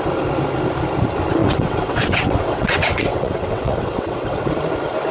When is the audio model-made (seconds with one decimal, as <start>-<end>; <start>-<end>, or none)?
1.4-4.5